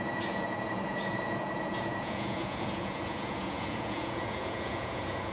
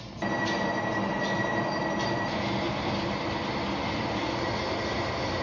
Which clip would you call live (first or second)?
second